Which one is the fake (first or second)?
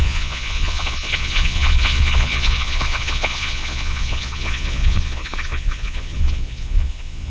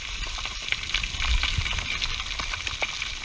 first